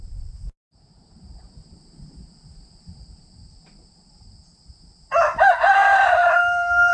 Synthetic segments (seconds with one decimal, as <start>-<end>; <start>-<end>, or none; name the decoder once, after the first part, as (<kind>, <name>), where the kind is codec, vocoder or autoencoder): 0.0-3.4 (vocoder, BigVGAN v2); 5.7-6.9